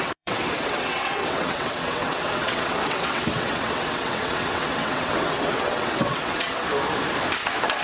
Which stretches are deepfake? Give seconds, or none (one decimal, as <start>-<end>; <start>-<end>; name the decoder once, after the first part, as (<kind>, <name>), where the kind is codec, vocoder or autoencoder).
0.0-6.7 (vocoder, WaveNeXt)